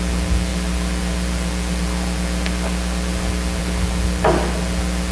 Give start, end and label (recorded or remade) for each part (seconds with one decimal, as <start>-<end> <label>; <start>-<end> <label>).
0.0-5.1 recorded